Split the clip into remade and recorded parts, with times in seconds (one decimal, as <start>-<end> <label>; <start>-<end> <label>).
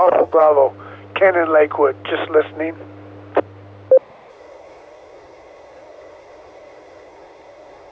0.0-0.4 remade; 0.4-4.3 recorded; 4.3-7.9 remade